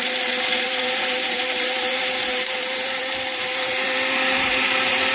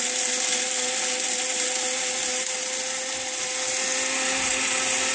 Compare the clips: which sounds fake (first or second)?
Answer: first